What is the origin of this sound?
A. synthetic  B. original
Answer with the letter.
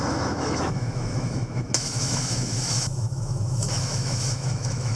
A